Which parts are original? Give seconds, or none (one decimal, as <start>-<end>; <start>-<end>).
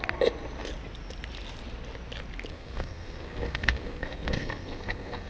0.0-2.5